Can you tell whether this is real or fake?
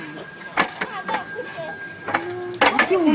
real